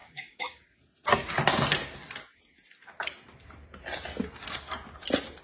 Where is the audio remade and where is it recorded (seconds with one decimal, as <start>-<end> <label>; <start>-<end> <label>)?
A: 0.0-0.6 remade; 0.6-5.4 recorded